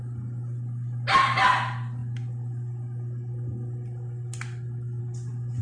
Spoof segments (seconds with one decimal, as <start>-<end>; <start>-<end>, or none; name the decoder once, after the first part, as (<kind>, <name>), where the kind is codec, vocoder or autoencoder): none